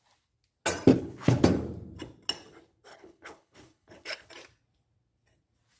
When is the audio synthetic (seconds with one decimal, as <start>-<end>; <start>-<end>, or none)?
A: 0.9-1.4; 2.9-4.3